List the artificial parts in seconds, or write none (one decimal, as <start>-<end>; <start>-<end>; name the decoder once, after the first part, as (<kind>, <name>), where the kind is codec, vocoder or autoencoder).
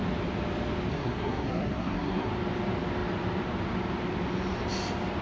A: 0.9-2.3 (codec, SNAC)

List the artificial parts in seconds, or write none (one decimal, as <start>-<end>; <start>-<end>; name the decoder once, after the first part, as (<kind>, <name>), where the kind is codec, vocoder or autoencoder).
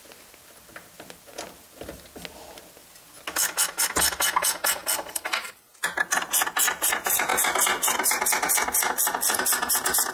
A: 4.8-5.7 (vocoder, BigVGAN v2); 7.3-8.2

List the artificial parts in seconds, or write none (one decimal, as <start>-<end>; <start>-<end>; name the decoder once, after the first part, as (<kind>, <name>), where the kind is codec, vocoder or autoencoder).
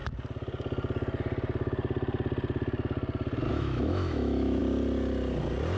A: 3.5-4.6 (autoencoder, DAC-VAE)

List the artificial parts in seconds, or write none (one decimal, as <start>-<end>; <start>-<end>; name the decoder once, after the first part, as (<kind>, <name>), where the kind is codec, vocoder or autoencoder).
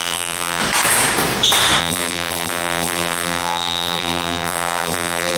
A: 0.0-0.6 (vocoder, BigVGAN v2); 1.8-5.4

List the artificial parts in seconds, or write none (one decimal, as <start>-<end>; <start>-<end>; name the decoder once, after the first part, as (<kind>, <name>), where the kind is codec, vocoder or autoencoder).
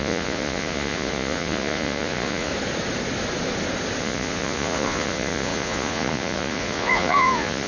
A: 0.0-2.5 (vocoder, Vocos); 4.0-7.7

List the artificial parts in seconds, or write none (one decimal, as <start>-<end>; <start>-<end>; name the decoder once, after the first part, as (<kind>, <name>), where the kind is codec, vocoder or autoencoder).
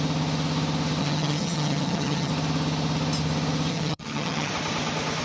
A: 1.0-2.3 (vocoder, HiFi-GAN); 3.7-4.5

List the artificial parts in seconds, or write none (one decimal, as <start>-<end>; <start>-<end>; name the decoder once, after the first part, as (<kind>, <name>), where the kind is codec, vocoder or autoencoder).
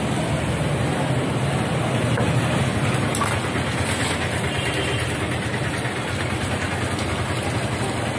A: none